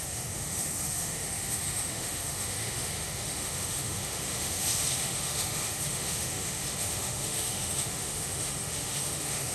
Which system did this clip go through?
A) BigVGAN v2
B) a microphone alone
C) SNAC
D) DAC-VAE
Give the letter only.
D